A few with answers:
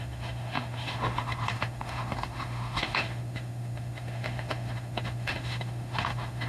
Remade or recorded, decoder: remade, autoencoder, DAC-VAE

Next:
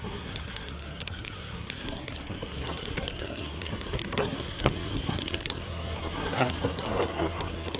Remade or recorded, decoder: remade, codec, SNAC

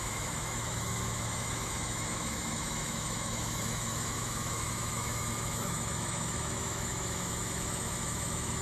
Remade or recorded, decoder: remade, autoencoder, DAC-VAE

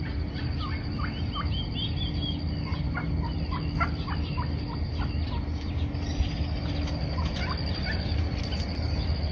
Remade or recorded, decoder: recorded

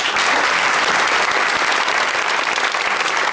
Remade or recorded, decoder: recorded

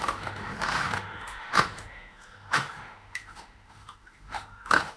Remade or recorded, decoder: remade, autoencoder, DAC-VAE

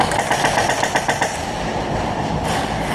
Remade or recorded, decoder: remade, vocoder, BigVGAN v2